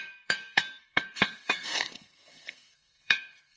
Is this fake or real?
fake